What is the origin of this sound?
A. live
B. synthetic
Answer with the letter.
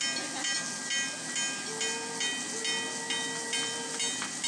A